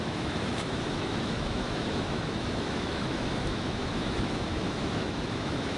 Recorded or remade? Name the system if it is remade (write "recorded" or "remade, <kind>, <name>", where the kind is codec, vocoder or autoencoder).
remade, autoencoder, DAC-VAE